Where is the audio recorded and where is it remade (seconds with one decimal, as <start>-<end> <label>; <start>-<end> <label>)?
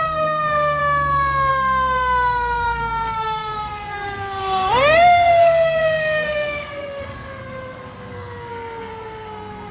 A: 0.0-0.8 remade; 0.8-1.5 recorded; 1.5-9.7 remade